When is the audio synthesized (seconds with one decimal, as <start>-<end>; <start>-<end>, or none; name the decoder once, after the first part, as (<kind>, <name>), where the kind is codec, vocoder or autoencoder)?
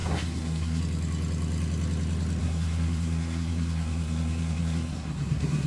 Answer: 0.0-0.8 (codec, SNAC); 2.4-5.7